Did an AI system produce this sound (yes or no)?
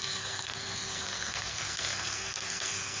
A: yes